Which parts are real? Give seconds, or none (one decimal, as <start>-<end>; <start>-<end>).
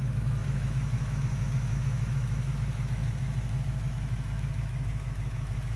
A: none